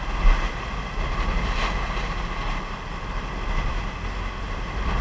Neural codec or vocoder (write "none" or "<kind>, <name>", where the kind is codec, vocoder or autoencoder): none